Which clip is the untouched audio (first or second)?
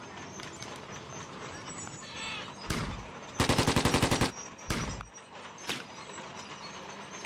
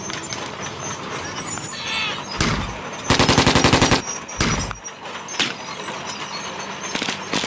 second